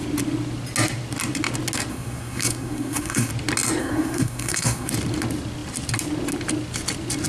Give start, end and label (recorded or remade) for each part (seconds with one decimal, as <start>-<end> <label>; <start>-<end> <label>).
0.0-1.9 recorded; 1.9-3.3 remade; 3.3-3.8 recorded; 3.8-4.9 remade; 4.9-7.3 recorded